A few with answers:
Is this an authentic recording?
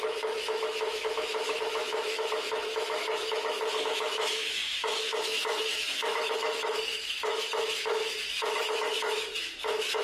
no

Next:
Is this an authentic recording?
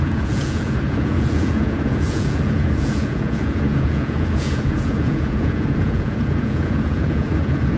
no